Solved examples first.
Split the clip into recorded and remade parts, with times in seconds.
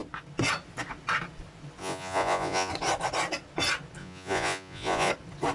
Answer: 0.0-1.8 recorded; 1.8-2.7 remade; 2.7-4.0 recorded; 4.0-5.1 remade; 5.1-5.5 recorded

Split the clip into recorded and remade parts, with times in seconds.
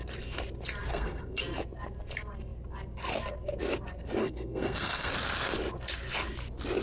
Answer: 0.0-0.9 recorded; 0.9-1.4 remade; 1.4-4.2 recorded; 4.2-5.1 remade; 5.1-6.8 recorded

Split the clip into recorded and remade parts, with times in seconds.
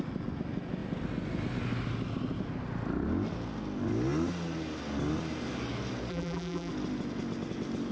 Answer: 0.0-6.1 recorded; 6.1-6.7 remade; 6.7-7.9 recorded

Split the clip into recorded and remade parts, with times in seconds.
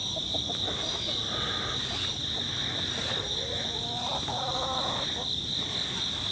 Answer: 0.0-6.3 recorded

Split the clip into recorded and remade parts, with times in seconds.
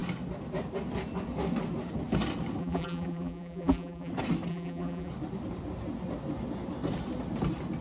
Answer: 0.0-2.6 recorded; 2.6-4.1 remade; 4.1-4.5 recorded; 4.5-5.1 remade; 5.1-7.8 recorded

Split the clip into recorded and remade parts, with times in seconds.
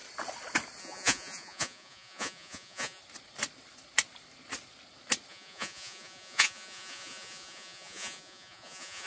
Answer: 0.0-0.8 recorded; 0.8-3.0 remade; 3.0-5.3 recorded; 5.3-9.1 remade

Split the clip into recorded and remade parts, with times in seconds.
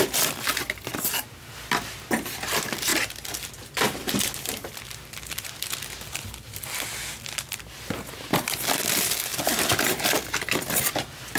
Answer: 0.0-11.4 recorded